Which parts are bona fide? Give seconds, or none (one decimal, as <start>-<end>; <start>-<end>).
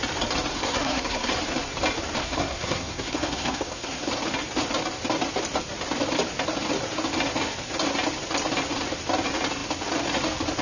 0.0-0.5; 1.3-2.2; 4.1-10.6